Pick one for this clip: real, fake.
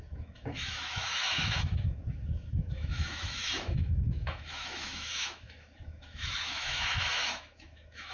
fake